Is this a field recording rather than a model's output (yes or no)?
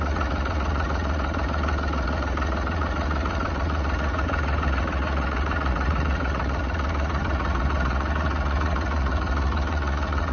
no